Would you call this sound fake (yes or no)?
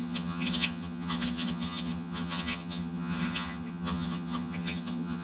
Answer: yes